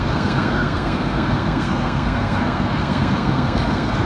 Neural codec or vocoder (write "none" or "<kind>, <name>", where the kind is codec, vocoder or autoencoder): codec, SNAC